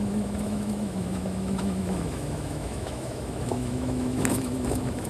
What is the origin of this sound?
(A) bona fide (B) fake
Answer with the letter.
B